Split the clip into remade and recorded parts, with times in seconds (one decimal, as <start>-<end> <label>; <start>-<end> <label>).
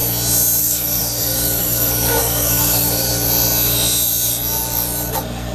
0.0-0.6 recorded; 0.6-3.1 remade; 3.1-5.1 recorded; 5.1-5.5 remade